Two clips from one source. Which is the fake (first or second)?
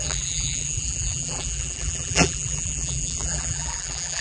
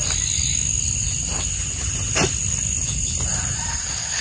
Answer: first